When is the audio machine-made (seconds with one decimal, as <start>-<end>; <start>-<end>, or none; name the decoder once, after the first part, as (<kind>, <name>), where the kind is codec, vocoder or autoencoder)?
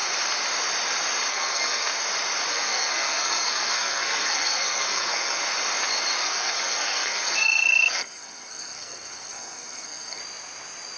1.3-1.9 (codec, SNAC); 2.5-5.4; 6.2-10.2